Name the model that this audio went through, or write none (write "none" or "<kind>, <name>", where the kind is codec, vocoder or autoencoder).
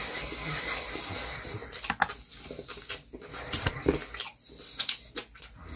none